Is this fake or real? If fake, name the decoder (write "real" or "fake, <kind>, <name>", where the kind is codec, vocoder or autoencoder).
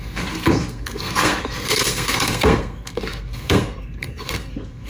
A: fake, codec, SNAC